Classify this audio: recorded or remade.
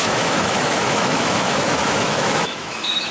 remade